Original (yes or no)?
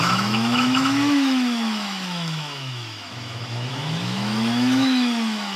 no